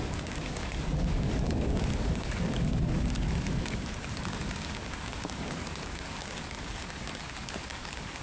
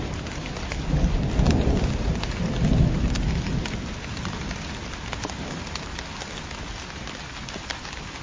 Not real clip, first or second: first